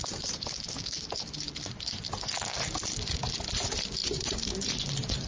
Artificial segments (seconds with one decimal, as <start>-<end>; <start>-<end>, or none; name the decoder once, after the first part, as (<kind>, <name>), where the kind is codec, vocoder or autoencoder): 0.0-0.5 (vocoder, BigVGAN v2); 4.0-4.8